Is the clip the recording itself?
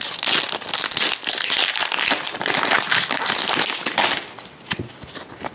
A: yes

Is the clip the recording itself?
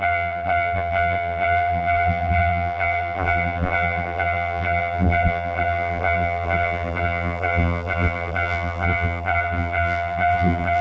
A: no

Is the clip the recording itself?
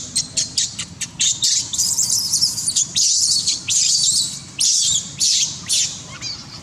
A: no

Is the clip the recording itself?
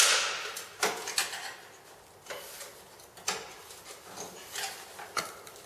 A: yes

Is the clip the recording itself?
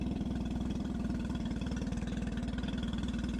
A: no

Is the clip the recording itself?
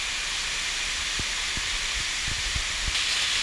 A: no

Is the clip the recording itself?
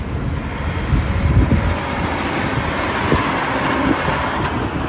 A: yes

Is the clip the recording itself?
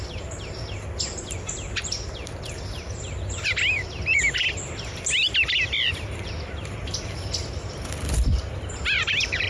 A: no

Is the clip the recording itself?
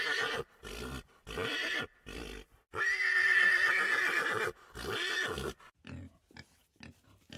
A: yes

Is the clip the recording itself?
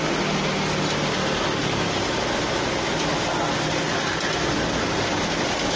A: yes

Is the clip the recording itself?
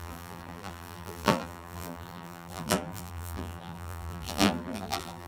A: no